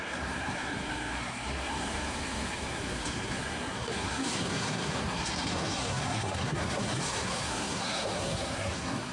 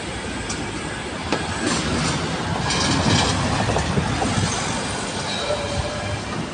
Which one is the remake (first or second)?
first